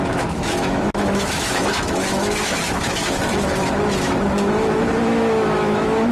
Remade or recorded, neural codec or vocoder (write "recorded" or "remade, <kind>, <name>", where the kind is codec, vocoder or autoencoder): remade, autoencoder, DAC-VAE